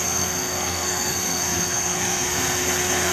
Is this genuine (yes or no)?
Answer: no